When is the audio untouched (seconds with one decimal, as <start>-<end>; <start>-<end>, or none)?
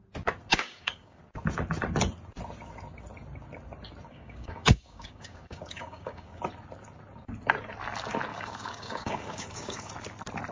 0.0-0.5; 1.2-4.1; 6.4-8.3; 9.9-10.5